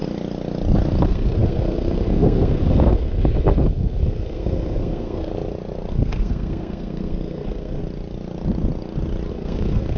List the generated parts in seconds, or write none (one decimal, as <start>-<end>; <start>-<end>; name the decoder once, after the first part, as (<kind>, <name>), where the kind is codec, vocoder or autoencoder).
1.0-5.3 (codec, SNAC); 5.9-7.8; 9.3-10.0